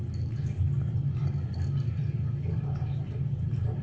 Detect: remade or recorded recorded